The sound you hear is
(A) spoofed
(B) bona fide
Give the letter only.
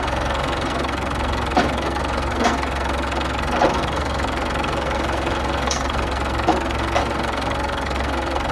A